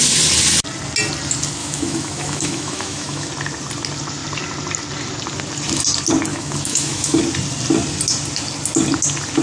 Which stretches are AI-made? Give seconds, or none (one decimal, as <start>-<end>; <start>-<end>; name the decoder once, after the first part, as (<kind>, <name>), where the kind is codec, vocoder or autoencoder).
1.6-3.3 (autoencoder, DAC-VAE); 6.3-7.2